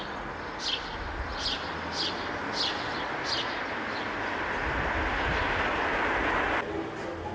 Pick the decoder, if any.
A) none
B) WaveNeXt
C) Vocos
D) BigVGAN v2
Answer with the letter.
A